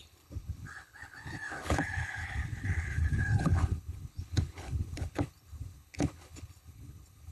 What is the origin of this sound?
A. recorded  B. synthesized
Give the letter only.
B